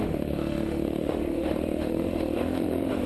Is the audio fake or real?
fake